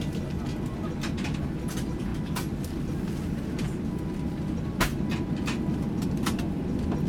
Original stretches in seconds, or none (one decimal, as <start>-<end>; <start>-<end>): 0.0-7.1

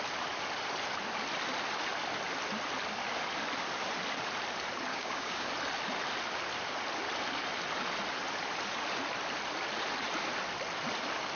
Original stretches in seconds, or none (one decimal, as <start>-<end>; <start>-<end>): 0.0-4.9; 5.5-11.4

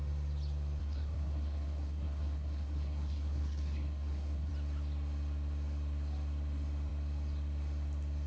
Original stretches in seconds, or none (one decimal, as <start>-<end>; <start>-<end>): 0.0-0.8; 4.5-8.3

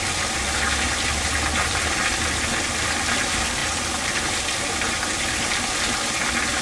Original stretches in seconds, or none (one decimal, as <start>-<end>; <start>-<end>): 0.0-6.6

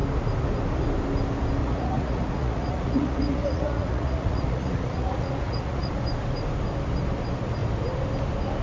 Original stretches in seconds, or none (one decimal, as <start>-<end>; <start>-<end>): 0.0-1.6; 5.9-8.6